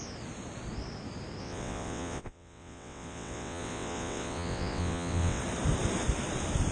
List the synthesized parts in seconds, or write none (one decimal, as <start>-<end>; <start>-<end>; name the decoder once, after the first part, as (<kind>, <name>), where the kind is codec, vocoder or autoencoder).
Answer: 1.4-5.4 (vocoder, WaveNeXt)